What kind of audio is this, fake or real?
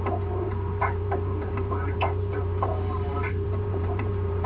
fake